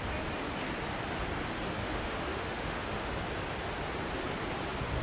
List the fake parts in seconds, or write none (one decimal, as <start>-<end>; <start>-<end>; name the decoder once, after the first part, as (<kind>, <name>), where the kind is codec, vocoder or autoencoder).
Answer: 1.8-3.1 (autoencoder, DAC-VAE)